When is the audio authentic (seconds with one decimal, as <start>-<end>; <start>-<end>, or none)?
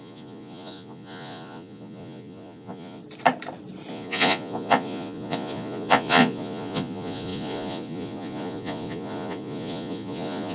3.0-3.9